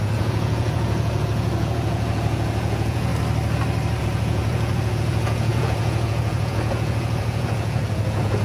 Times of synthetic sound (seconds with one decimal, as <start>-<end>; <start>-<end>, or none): 0.0-3.1; 4.0-8.4